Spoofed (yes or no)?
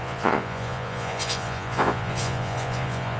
yes